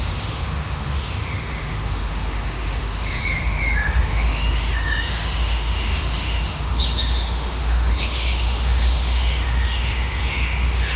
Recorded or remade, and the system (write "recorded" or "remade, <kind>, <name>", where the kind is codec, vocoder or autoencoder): remade, autoencoder, DAC-VAE